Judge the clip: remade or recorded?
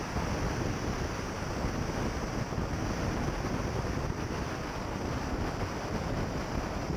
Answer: recorded